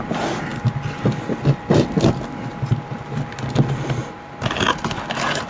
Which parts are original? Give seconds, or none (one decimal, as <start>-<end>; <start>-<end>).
0.0-5.5